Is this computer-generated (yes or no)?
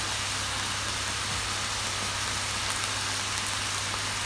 no